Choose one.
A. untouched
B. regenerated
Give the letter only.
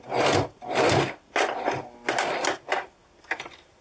A